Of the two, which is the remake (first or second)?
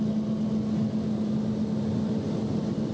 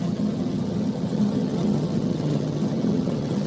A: second